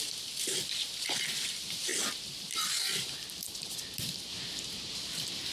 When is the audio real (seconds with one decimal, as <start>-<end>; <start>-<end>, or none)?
0.0-5.5